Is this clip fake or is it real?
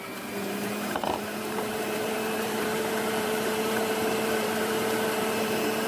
fake